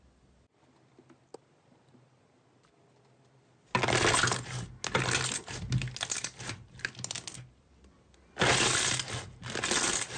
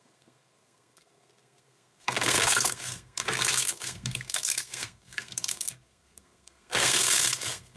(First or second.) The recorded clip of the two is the first